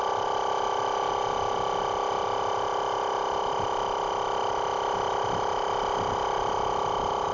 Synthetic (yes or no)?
no